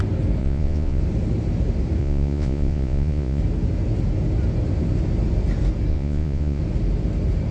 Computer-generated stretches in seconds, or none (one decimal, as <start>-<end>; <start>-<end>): 0.4-1.0; 2.0-3.4; 5.9-6.6